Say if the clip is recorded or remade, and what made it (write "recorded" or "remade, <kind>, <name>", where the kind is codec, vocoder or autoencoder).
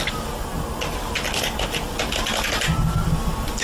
recorded